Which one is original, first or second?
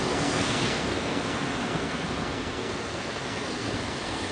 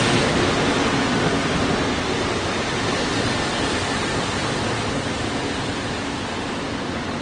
second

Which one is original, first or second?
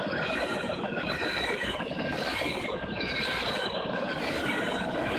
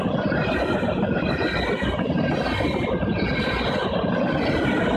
second